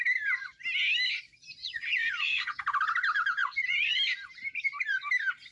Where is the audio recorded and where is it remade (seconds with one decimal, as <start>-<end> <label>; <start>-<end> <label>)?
0.0-1.6 recorded; 1.6-2.6 remade; 2.6-3.4 recorded; 3.4-3.9 remade; 3.9-5.5 recorded